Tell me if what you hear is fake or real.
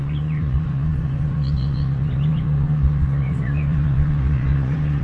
fake